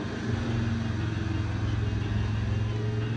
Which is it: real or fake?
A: real